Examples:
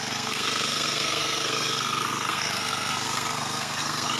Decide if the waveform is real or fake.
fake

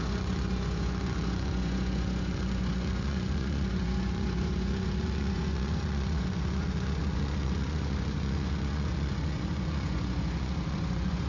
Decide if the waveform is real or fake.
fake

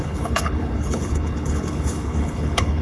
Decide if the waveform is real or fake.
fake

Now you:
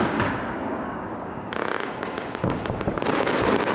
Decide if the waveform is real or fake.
fake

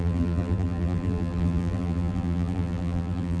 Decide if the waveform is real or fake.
fake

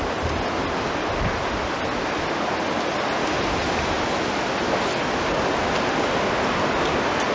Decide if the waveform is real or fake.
real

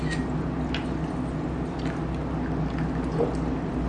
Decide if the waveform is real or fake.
real